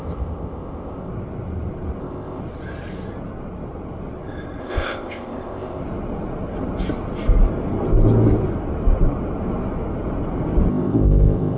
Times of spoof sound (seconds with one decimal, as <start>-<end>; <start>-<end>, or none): 0.0-1.1; 2.0-2.4; 4.6-5.8; 10.7-11.6